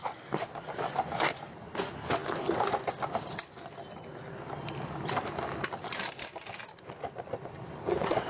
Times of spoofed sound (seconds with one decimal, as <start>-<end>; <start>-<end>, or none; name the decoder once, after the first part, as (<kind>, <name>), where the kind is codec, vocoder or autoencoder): 2.2-7.2 (vocoder, BigVGAN v2)